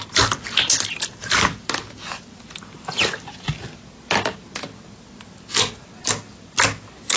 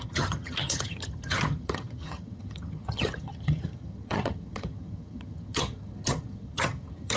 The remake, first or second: second